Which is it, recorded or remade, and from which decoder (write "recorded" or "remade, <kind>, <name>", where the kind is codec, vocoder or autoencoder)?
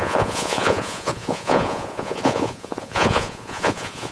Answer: remade, vocoder, Vocos